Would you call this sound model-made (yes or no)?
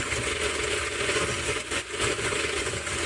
yes